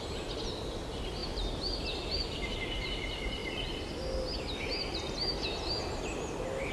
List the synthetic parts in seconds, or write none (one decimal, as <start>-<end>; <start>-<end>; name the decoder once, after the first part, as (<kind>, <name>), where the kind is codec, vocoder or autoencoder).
none